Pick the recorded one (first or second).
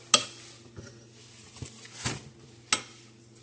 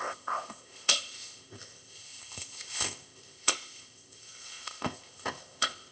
first